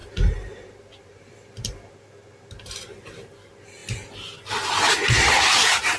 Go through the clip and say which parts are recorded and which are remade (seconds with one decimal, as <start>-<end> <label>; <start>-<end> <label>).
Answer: 0.0-3.3 remade; 3.3-6.0 recorded